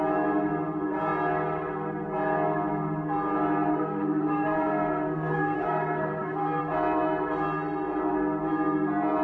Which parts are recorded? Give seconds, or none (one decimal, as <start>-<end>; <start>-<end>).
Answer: 0.0-3.7; 6.6-9.2